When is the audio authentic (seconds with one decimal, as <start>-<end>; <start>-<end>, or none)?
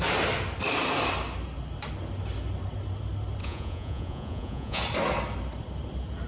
0.0-3.4; 4.8-6.3